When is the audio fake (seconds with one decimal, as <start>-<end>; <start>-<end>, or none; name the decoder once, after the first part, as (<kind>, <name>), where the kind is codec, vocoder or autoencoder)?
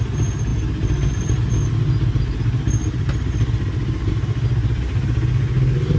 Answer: none